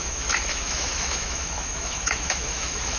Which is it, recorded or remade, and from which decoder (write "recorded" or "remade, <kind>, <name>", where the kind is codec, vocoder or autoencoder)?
remade, autoencoder, DAC-VAE